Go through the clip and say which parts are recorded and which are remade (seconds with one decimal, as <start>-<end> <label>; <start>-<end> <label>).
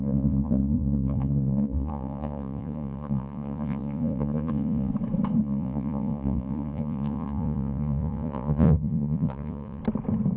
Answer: 0.0-4.9 remade; 4.9-5.4 recorded; 5.4-9.8 remade; 9.8-10.4 recorded